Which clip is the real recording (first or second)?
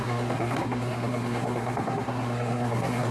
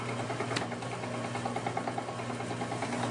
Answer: second